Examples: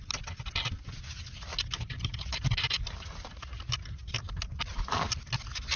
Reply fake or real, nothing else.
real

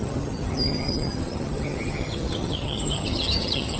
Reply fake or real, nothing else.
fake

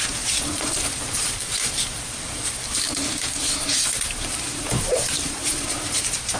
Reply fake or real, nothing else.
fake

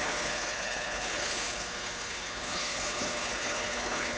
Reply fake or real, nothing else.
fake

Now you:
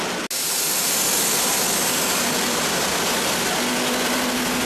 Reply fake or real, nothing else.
real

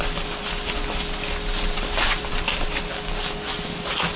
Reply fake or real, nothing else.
real